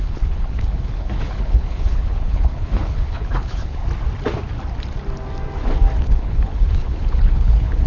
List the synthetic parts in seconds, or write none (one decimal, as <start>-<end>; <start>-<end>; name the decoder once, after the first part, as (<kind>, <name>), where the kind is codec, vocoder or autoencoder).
0.0-3.8 (codec, HILCodec); 6.0-7.9